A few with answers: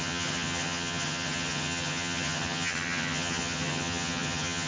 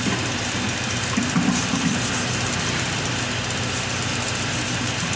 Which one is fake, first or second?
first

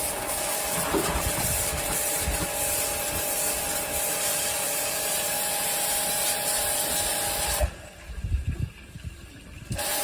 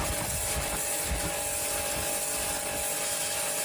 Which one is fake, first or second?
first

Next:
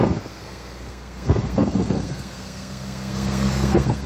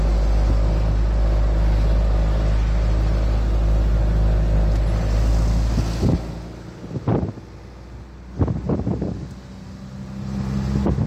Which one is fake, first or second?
first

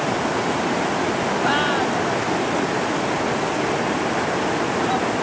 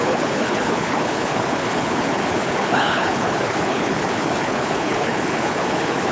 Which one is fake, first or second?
second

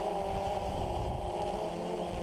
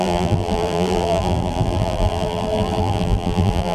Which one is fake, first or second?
second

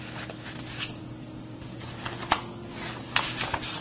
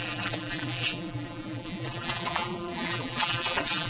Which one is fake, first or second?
second